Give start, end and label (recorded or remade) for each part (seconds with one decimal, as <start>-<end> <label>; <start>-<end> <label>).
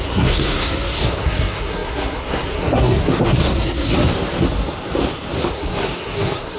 0.0-3.9 remade; 3.9-5.5 recorded; 5.5-6.6 remade